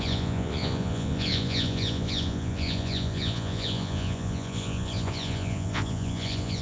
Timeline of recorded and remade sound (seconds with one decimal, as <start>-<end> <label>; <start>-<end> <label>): 0.0-6.6 remade